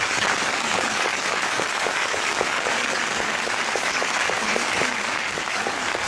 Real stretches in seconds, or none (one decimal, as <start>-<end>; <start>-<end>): none